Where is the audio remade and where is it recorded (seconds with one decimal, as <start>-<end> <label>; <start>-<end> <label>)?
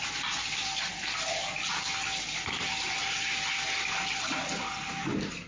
0.0-5.5 recorded